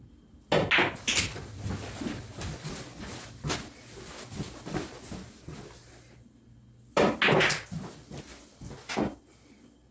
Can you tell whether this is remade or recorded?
recorded